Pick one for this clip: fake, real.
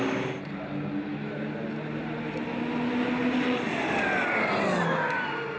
real